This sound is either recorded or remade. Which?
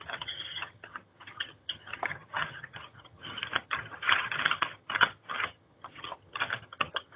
remade